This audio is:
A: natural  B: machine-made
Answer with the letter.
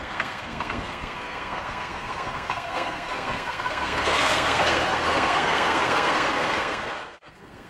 B